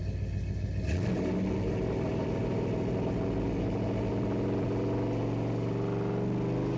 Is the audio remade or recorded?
recorded